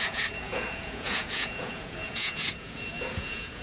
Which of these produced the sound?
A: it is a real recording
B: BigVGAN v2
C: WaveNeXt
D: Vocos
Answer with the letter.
D